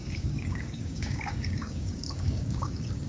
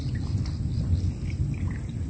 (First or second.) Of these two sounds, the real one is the second